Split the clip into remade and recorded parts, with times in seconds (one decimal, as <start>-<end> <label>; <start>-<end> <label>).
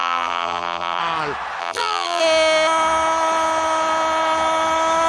0.0-1.0 remade; 1.0-1.6 recorded; 1.6-2.2 remade; 2.2-5.1 recorded